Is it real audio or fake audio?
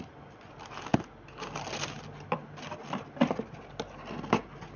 real